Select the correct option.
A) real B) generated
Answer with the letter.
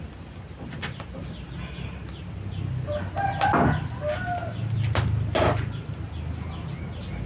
A